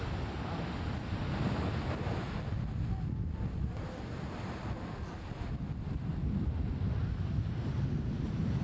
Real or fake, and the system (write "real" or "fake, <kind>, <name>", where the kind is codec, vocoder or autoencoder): real